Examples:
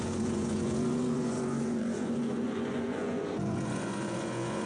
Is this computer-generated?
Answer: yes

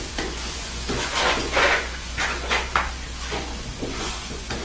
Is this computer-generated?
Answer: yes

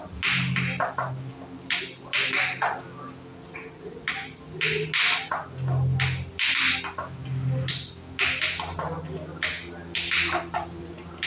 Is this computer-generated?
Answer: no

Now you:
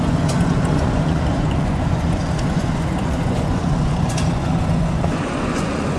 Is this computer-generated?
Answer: yes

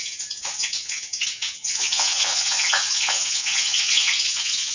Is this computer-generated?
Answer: yes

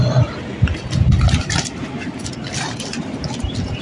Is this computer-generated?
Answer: no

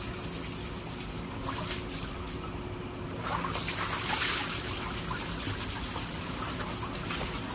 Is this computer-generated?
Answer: no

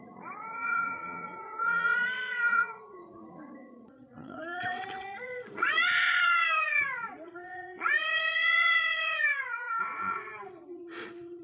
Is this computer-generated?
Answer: yes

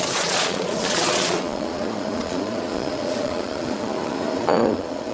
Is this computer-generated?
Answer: yes